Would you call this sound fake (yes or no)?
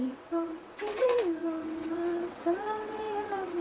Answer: yes